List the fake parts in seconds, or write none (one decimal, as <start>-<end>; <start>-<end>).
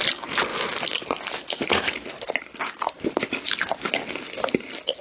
none